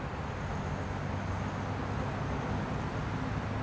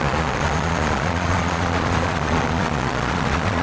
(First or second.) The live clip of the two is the first